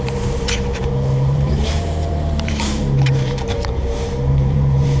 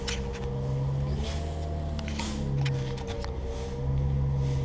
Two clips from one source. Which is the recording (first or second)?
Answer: second